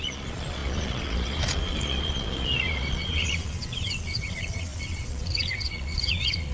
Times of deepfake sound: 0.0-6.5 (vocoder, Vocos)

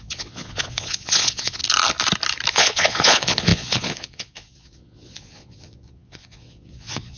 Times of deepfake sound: 0.0-1.6 (vocoder, Vocos); 2.5-7.2

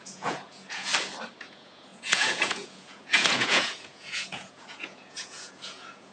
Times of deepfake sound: 0.0-0.9 (vocoder, Vocos); 1.4-6.1

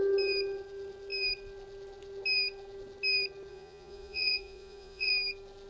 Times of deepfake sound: 3.5-5.1 (vocoder, Vocos)

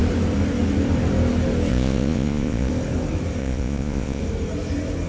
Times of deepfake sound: 1.7-2.7 (vocoder, Vocos); 3.4-4.2

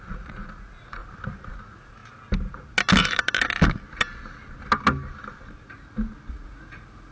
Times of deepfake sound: 0.0-1.0 (vocoder, Vocos); 1.5-2.0; 6.3-7.1